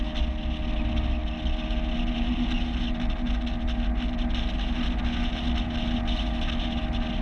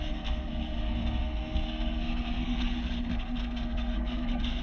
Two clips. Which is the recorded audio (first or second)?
first